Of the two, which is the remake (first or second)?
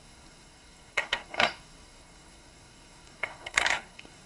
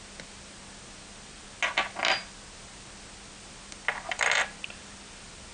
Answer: first